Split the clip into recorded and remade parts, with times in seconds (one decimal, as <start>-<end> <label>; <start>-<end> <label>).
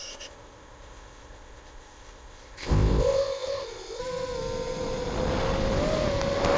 0.0-4.0 remade; 4.0-6.6 recorded